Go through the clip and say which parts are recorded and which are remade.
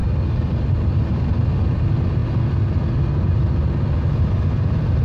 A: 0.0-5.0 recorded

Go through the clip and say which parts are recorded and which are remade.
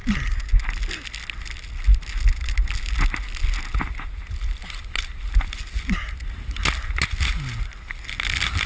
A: 0.0-8.7 recorded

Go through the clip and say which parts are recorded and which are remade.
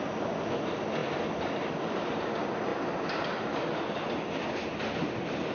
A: 0.0-2.7 remade; 2.7-3.9 recorded; 3.9-5.5 remade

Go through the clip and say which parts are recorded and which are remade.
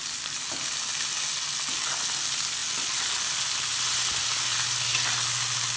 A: 0.0-5.8 recorded